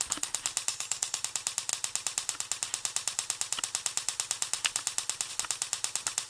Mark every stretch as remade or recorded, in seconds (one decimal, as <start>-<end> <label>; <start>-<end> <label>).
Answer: 0.0-0.7 recorded; 0.7-1.2 remade; 1.2-6.3 recorded